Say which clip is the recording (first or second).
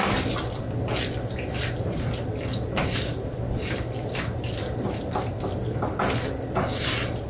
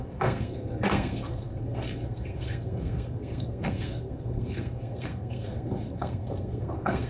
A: first